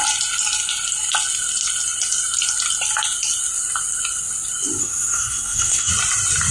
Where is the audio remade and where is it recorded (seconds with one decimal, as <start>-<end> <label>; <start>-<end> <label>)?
0.0-4.8 recorded; 4.8-5.9 remade; 5.9-6.5 recorded